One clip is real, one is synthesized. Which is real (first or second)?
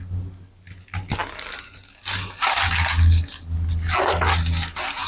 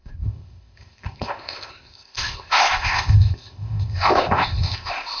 first